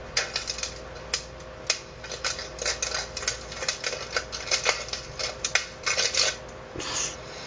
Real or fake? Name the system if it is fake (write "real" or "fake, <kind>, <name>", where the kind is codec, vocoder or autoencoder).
real